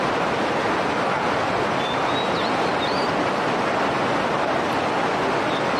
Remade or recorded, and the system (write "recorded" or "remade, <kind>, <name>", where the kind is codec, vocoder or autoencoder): recorded